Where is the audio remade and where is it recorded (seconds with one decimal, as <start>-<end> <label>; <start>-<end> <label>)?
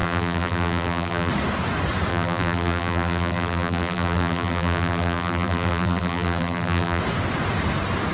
0.0-1.3 remade; 1.3-2.1 recorded; 2.1-7.0 remade; 7.0-8.1 recorded